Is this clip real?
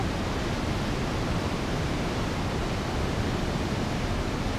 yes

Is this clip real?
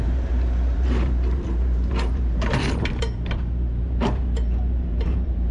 no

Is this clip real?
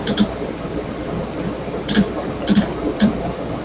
no